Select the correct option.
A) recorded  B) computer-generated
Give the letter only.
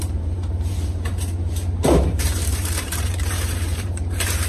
B